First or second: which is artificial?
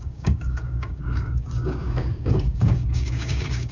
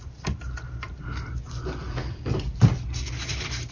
first